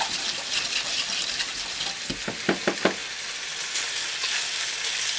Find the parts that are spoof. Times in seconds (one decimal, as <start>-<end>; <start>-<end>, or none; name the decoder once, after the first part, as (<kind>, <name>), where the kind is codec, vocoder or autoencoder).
none